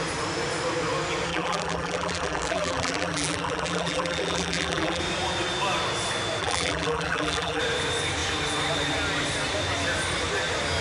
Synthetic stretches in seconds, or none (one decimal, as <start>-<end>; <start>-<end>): 1.3-5.0; 6.4-7.6

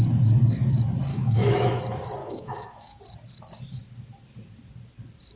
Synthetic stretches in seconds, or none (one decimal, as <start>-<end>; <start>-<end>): 1.1-1.8; 2.2-3.0

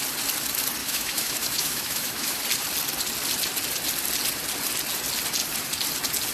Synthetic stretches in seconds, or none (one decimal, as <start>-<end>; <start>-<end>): 0.8-2.4